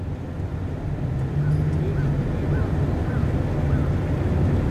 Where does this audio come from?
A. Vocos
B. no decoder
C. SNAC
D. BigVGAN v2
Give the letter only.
B